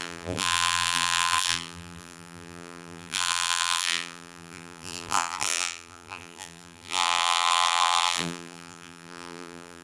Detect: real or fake fake